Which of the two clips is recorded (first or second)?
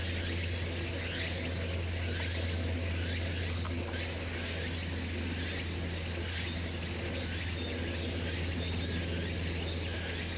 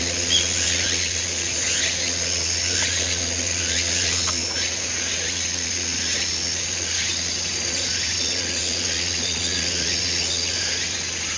first